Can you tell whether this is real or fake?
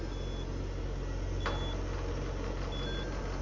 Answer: real